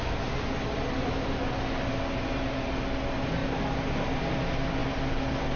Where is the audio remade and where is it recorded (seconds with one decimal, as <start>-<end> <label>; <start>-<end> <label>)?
0.0-5.6 recorded